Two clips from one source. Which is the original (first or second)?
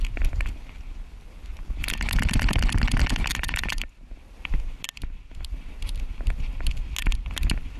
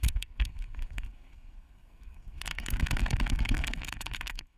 first